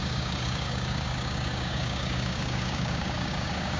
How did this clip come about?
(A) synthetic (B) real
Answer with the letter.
A